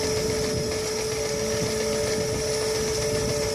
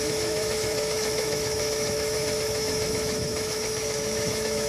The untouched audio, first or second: first